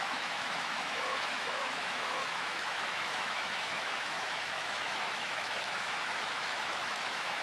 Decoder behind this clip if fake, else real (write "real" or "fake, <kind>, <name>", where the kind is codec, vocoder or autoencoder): fake, autoencoder, DAC-VAE